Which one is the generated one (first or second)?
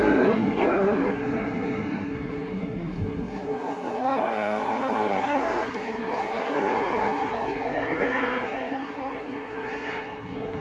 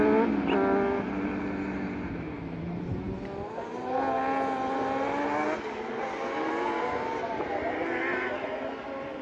first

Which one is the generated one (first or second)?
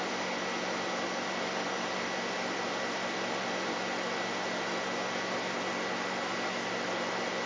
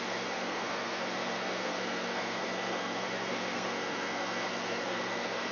second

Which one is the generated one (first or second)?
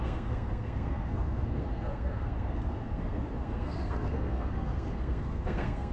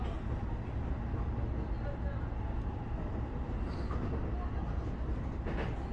first